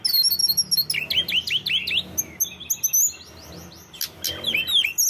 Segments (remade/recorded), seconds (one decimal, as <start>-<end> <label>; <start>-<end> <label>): 0.0-5.1 recorded